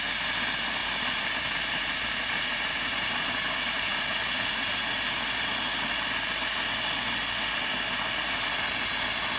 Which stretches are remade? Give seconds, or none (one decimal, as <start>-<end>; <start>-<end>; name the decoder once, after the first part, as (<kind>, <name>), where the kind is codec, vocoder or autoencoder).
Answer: 0.8-5.8 (vocoder, BigVGAN v2)